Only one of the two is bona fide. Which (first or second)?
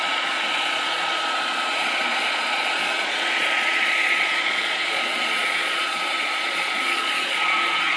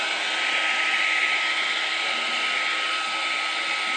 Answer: second